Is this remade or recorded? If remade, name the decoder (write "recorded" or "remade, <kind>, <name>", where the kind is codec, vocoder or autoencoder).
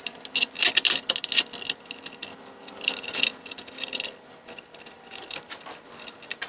recorded